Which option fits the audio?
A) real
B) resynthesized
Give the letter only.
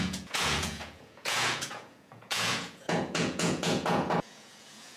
B